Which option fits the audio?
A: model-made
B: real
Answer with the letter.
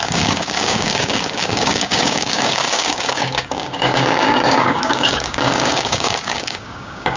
A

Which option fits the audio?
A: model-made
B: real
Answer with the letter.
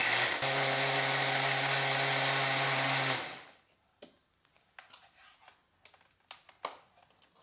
B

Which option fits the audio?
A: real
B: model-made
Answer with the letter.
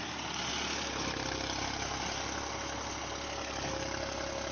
A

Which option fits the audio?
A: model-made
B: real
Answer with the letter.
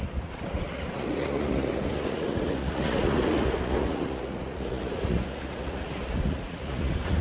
A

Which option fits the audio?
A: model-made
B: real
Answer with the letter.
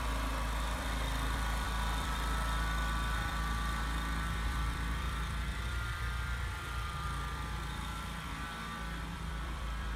A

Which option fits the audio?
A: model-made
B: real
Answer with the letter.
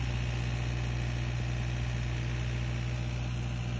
B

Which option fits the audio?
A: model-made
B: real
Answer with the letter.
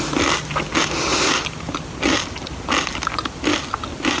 B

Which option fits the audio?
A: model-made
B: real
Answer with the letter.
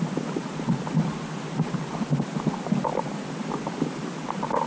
B